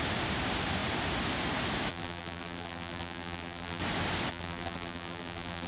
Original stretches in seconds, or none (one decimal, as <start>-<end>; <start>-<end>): 0.0-1.9; 3.8-4.3